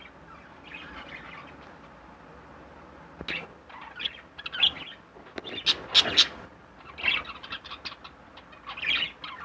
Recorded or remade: recorded